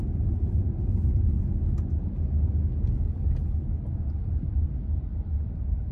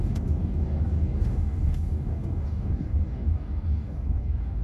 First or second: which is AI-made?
second